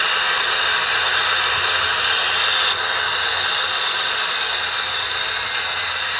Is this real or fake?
real